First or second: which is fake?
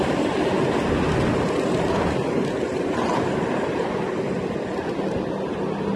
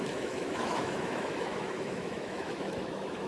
second